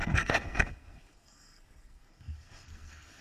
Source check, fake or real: fake